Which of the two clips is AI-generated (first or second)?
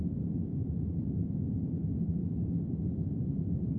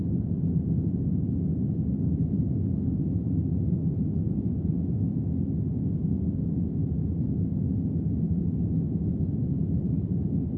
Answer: first